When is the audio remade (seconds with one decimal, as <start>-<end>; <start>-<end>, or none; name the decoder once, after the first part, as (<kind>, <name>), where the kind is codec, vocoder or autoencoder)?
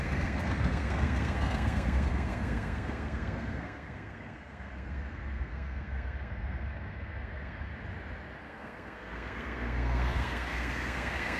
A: 0.0-7.7 (codec, SNAC); 8.4-11.4